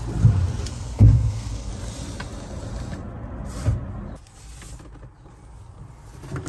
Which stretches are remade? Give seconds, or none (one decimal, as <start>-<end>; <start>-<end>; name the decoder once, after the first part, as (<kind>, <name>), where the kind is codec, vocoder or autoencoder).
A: 0.7-1.7 (codec, SNAC)